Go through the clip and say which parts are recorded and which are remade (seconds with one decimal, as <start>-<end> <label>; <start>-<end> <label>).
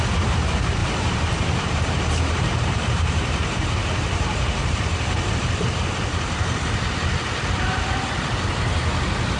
0.0-0.8 recorded; 0.8-5.3 remade; 5.3-9.4 recorded